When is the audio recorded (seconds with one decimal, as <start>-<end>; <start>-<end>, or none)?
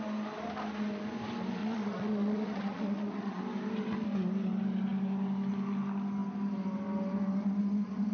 0.0-1.6; 3.4-8.1